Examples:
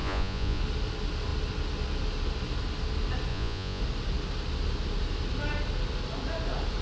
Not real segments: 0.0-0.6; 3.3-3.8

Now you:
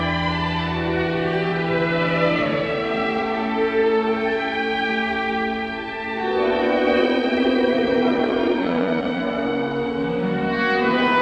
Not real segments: 7.0-9.2

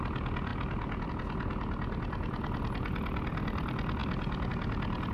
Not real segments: none

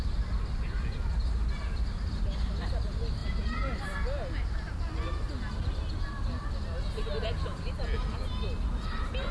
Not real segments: none

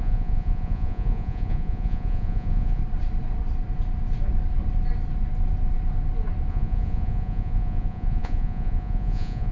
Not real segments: 0.0-2.8; 6.5-9.5

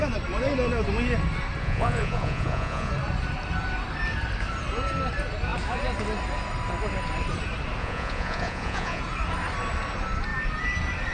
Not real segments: 1.6-2.9; 7.8-9.0

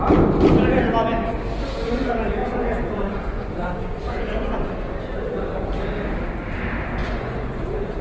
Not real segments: 2.4-5.0; 7.0-7.6